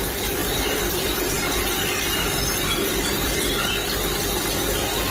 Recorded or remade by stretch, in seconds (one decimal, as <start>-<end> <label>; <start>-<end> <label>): 0.0-0.4 recorded; 0.4-3.5 remade; 3.5-5.1 recorded